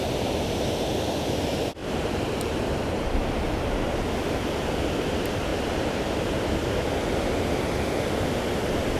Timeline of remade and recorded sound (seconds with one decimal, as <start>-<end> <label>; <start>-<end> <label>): 0.0-1.8 recorded; 1.8-2.6 remade; 2.6-5.5 recorded; 5.5-6.3 remade; 6.3-9.0 recorded